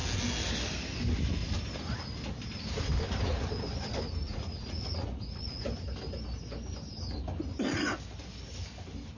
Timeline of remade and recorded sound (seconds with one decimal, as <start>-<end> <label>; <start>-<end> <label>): 0.0-4.2 recorded; 4.2-5.6 remade; 5.6-9.2 recorded